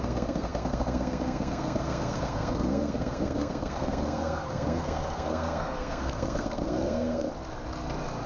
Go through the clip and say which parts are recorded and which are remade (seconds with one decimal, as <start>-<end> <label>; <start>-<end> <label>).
0.0-7.3 remade; 7.3-8.3 recorded